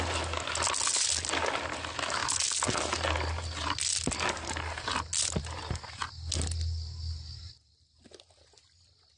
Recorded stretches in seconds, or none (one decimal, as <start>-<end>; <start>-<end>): 0.0-9.2